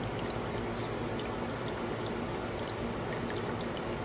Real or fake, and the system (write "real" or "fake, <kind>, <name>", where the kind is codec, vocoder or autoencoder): real